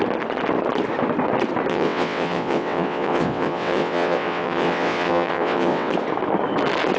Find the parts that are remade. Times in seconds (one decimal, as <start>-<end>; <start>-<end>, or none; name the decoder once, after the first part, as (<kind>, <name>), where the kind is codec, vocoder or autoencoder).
1.7-5.9 (vocoder, WaveNeXt)